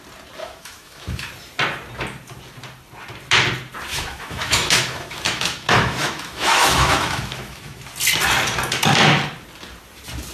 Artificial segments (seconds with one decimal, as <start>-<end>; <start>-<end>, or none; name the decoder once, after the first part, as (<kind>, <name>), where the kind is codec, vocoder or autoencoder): 0.4-1.3 (autoencoder, DAC-VAE); 3.9-7.8